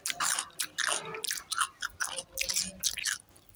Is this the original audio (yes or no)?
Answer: yes